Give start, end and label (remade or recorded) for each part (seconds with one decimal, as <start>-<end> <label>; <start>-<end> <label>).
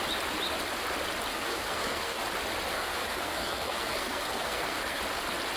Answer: 0.0-1.3 recorded; 1.3-2.2 remade; 2.2-2.7 recorded; 2.7-5.0 remade; 5.0-5.6 recorded